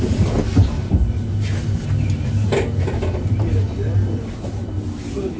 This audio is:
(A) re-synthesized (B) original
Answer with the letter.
B